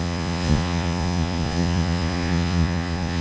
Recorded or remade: remade